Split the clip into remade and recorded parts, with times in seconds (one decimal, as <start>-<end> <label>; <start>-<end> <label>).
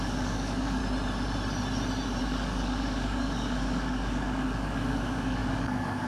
0.0-0.8 remade; 0.8-2.2 recorded; 2.2-6.1 remade